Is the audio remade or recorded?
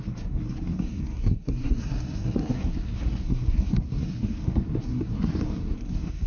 remade